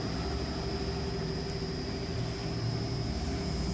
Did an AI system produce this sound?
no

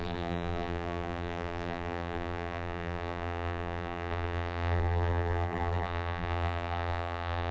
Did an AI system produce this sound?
yes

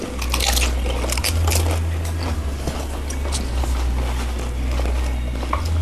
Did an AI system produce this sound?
no